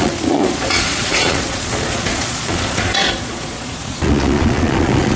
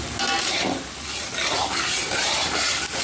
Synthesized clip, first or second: first